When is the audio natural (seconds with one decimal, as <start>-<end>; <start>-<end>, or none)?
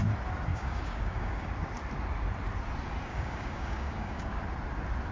0.0-0.5; 1.5-3.1; 4.4-5.1